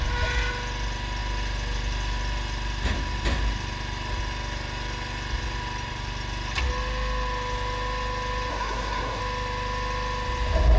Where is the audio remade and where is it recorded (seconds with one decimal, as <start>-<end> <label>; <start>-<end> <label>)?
0.0-8.5 recorded; 8.5-9.2 remade; 9.2-10.8 recorded